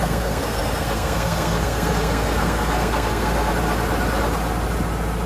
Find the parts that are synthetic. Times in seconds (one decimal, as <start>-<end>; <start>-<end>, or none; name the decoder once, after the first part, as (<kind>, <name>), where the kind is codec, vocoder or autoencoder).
0.0-3.5 (codec, SNAC)